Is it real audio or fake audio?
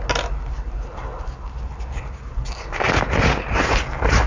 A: real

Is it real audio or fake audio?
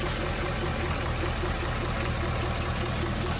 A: real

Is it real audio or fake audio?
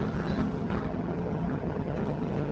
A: fake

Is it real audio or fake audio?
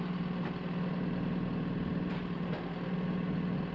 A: real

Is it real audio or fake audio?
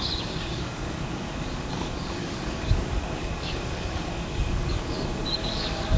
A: fake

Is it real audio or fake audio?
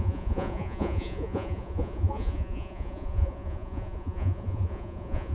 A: fake